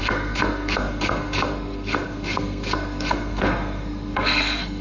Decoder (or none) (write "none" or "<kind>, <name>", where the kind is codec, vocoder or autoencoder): codec, SNAC